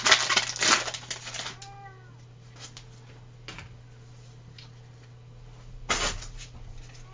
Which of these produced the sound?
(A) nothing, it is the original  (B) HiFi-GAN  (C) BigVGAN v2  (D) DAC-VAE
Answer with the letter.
A